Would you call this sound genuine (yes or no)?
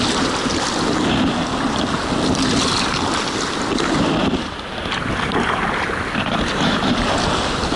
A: yes